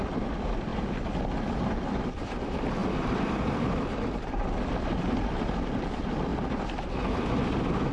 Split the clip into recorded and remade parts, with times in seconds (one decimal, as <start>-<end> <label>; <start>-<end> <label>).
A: 0.0-0.7 remade; 0.7-1.7 recorded; 1.7-6.3 remade; 6.3-7.3 recorded; 7.3-7.9 remade